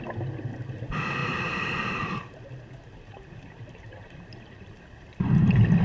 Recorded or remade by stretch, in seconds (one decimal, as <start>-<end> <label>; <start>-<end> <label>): 0.0-1.2 recorded; 1.2-4.7 remade; 4.7-5.8 recorded